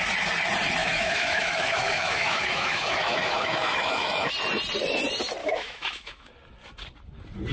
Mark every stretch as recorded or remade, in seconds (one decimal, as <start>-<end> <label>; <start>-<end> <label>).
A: 0.0-0.8 recorded; 0.8-4.3 remade; 4.3-5.4 recorded; 5.4-6.3 remade; 6.3-7.5 recorded